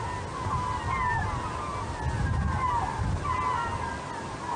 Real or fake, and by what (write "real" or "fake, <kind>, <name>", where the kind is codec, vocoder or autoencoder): real